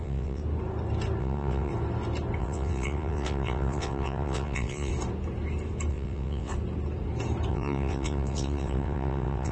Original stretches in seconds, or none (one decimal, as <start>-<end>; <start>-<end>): 0.4-1.2; 1.7-2.4; 4.9-5.9; 6.5-7.5